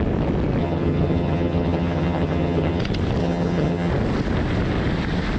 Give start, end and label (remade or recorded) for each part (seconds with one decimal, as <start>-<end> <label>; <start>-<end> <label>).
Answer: 0.0-0.6 recorded; 0.6-2.8 remade; 2.8-3.2 recorded; 3.2-3.9 remade; 3.9-5.4 recorded